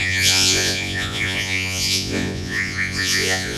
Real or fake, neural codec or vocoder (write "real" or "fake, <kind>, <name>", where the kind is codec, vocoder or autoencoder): fake, vocoder, Vocos